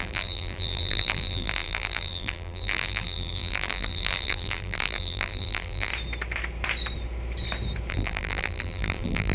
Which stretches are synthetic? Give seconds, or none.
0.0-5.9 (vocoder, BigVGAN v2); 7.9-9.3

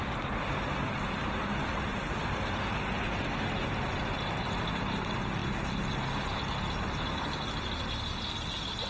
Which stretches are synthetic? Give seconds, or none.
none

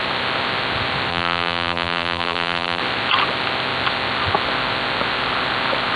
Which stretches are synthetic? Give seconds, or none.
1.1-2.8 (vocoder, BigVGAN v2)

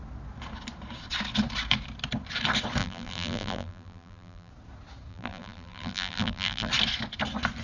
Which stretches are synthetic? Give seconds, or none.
2.8-4.5 (vocoder, BigVGAN v2); 5.1-6.7

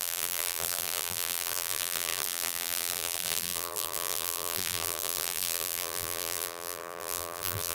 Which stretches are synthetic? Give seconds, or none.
0.0-7.7 (vocoder, BigVGAN v2)

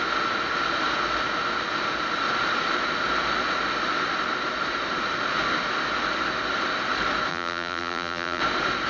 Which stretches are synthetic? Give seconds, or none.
7.3-8.4 (vocoder, BigVGAN v2)

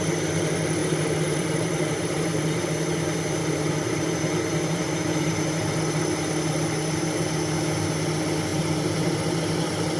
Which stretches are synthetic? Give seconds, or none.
0.8-2.6 (vocoder, BigVGAN v2); 3.4-6.0; 8.5-9.4

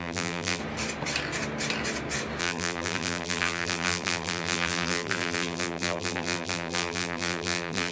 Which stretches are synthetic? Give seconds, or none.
0.0-0.6 (vocoder, BigVGAN v2); 2.4-7.9